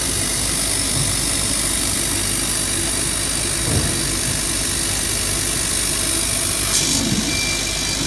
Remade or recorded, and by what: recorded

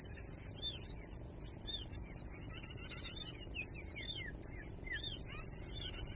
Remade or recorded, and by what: recorded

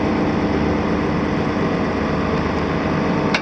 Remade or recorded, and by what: recorded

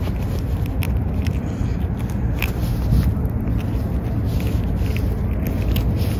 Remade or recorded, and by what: recorded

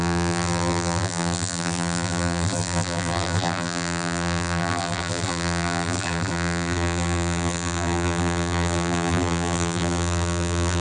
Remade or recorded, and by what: remade, vocoder, BigVGAN v2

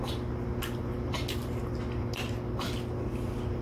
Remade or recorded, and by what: recorded